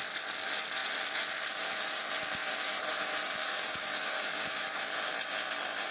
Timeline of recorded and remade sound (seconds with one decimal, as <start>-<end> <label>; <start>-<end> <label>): 0.0-3.4 recorded; 3.4-4.8 remade; 4.8-5.9 recorded